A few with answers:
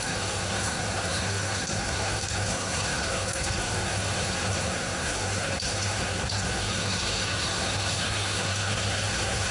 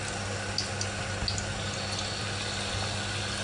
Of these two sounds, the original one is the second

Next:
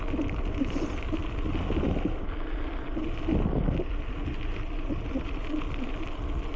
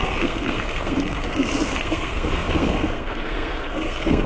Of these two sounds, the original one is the first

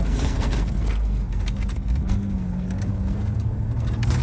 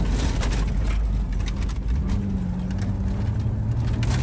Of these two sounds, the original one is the second